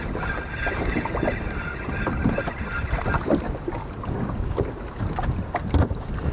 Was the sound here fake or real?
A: real